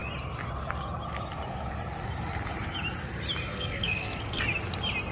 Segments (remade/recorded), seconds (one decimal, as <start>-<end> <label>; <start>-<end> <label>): 0.0-3.5 recorded; 3.5-4.4 remade; 4.4-5.1 recorded